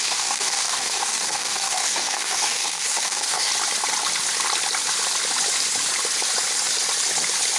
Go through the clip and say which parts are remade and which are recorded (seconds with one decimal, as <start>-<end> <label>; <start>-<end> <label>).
0.0-3.5 remade; 3.5-7.6 recorded